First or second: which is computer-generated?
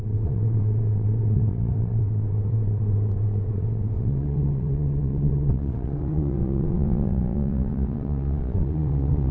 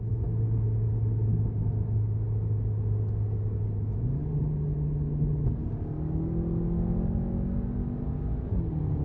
first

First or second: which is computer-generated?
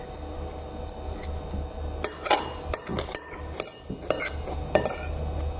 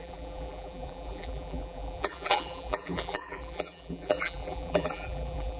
second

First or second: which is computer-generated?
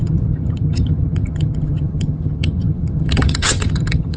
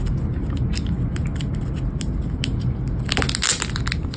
first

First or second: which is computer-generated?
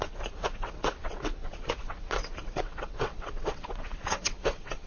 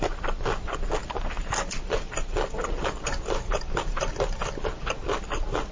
first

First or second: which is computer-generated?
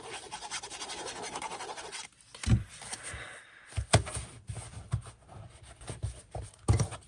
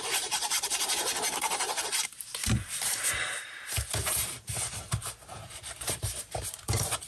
second